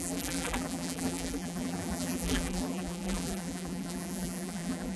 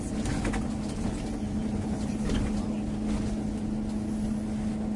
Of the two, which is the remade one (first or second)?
first